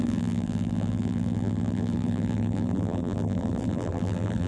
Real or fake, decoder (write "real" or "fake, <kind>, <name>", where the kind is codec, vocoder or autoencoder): fake, vocoder, BigVGAN v2